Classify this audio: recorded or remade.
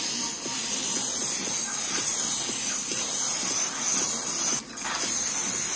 recorded